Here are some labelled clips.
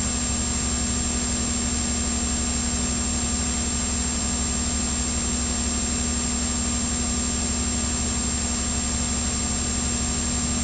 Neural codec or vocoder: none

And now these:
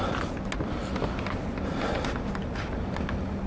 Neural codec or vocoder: none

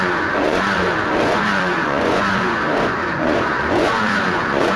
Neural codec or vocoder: vocoder, Vocos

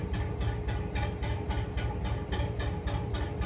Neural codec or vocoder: none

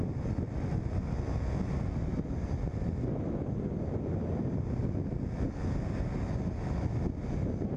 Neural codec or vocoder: none